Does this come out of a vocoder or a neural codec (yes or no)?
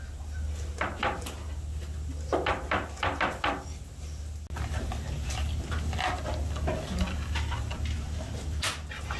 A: no